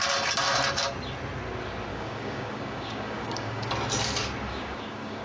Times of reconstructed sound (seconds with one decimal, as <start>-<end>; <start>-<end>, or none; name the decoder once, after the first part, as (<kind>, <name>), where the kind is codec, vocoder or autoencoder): 1.9-3.7 (codec, DAC); 4.5-5.2